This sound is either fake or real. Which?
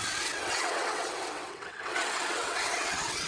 fake